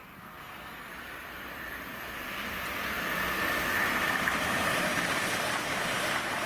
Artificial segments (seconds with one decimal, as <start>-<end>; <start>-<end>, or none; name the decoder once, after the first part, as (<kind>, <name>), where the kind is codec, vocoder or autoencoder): 0.0-0.9 (codec, SNAC)